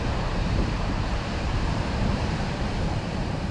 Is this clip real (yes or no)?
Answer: no